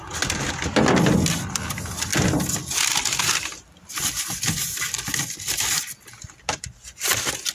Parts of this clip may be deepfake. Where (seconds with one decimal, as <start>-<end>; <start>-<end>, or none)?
none

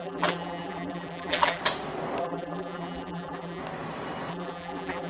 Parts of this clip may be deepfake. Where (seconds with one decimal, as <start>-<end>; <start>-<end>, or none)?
0.0-1.6; 2.2-3.6; 4.3-5.1